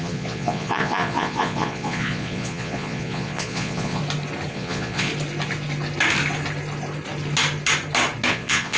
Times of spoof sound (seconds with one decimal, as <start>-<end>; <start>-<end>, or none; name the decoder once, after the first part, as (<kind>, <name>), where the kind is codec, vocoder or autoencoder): 0.0-4.0 (vocoder, Vocos); 4.5-5.1; 8.3-8.8